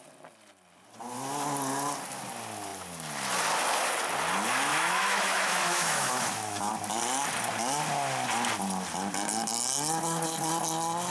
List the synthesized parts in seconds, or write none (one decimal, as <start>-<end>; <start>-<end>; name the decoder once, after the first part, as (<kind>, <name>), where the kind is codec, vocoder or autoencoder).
4.7-6.7 (autoencoder, DAC-VAE)